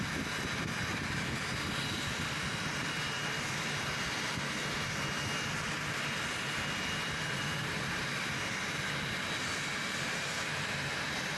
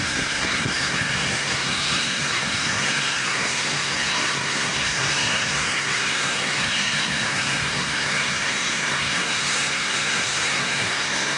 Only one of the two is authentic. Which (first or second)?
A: first